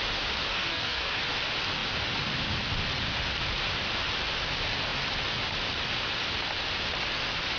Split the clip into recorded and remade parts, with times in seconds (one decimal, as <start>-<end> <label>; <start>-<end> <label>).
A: 0.0-0.5 recorded; 0.5-1.2 remade; 1.2-7.6 recorded

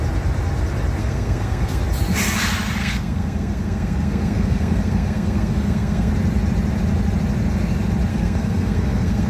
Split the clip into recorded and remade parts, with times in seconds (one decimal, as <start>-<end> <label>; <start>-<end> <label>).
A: 0.0-1.0 recorded; 1.0-1.8 remade; 1.8-2.8 recorded; 2.8-6.1 remade; 6.1-8.1 recorded; 8.1-9.3 remade